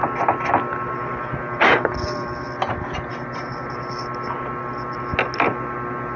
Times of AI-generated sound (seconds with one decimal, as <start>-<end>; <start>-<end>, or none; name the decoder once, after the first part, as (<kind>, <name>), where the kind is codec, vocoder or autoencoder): none